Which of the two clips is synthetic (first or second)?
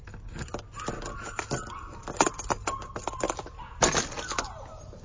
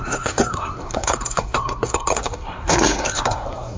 second